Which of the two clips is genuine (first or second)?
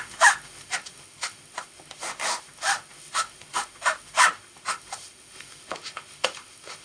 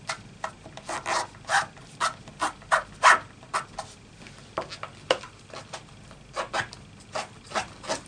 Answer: second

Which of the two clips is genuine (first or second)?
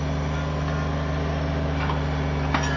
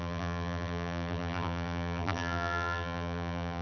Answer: first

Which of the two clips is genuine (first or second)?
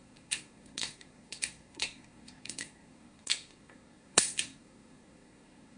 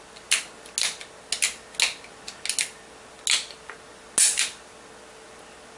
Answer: second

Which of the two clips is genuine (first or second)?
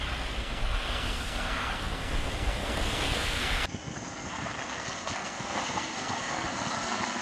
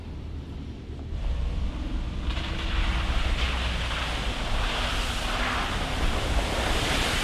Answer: second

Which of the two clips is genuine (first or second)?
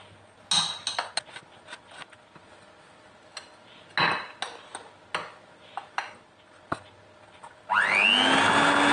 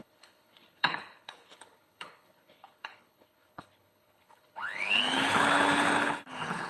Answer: first